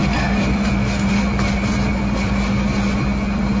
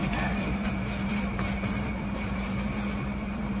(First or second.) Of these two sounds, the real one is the first